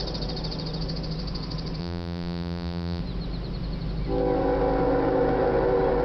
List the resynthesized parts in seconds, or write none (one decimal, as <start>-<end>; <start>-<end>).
1.8-3.0